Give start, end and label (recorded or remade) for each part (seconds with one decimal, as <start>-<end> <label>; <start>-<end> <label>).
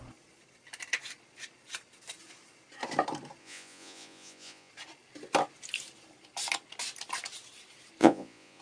0.0-3.4 recorded; 3.4-4.7 remade; 4.7-8.0 recorded; 8.0-8.6 remade